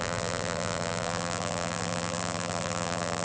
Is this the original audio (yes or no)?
no